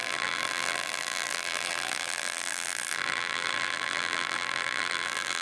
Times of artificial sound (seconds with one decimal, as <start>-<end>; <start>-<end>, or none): 0.0-5.4